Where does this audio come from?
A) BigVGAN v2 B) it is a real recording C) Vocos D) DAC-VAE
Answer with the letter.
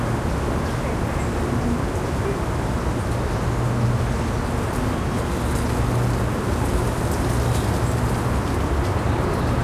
B